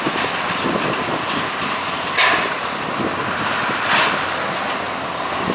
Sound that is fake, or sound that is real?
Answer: real